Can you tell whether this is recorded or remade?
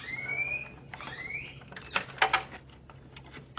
recorded